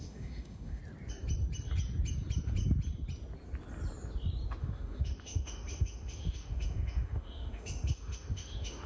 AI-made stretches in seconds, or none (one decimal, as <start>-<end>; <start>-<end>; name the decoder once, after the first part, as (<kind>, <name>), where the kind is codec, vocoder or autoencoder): 0.0-0.8 (autoencoder, DAC-VAE); 4.6-8.9